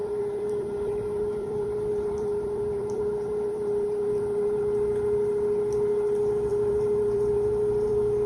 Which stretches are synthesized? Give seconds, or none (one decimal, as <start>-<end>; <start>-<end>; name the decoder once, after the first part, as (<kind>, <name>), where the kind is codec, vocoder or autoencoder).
0.0-4.6 (vocoder, BigVGAN v2); 6.5-7.9